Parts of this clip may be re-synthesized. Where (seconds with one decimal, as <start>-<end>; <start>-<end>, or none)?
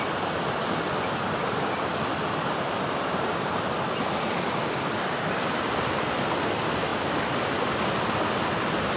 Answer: none